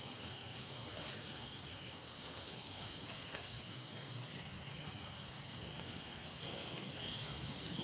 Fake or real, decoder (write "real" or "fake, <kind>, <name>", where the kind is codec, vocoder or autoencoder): fake, codec, SNAC